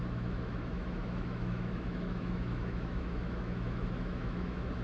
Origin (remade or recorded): remade